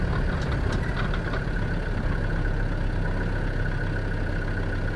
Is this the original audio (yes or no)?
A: yes